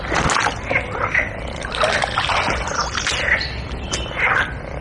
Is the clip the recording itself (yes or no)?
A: yes